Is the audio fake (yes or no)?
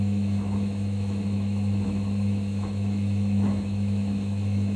yes